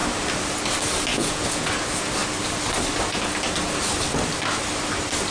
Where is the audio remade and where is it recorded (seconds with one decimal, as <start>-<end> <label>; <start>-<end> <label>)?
0.0-1.1 recorded; 1.1-1.7 remade; 1.7-5.3 recorded